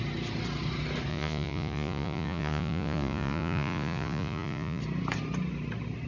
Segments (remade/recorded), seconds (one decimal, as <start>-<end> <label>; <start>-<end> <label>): 0.0-1.1 recorded; 1.1-4.8 remade; 4.8-6.1 recorded